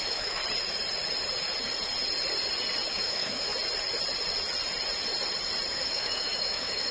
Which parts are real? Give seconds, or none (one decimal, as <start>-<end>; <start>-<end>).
0.4-2.9; 3.5-5.7